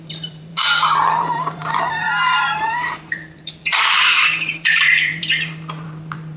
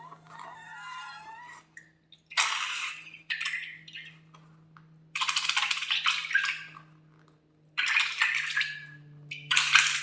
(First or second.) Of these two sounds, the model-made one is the first